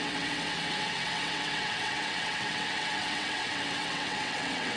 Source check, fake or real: fake